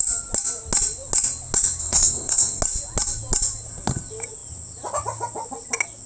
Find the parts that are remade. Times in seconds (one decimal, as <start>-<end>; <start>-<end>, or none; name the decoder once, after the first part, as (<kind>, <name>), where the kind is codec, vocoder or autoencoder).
1.8-2.6 (codec, SNAC)